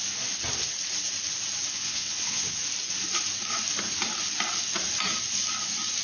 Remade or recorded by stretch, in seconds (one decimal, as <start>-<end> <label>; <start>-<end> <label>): 0.0-1.7 recorded; 1.7-2.6 remade; 2.6-6.0 recorded

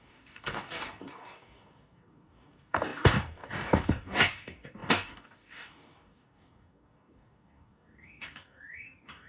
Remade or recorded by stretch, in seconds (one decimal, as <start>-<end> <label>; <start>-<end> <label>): 0.0-9.3 remade